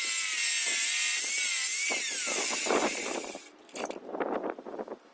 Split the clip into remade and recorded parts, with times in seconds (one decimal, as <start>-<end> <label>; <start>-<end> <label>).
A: 0.0-5.1 recorded